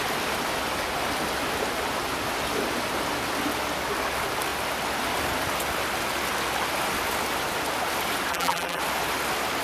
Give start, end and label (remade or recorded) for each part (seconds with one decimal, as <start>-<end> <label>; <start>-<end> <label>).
0.0-8.3 recorded; 8.3-8.8 remade; 8.8-9.6 recorded